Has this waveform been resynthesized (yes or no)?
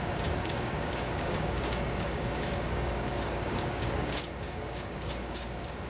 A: yes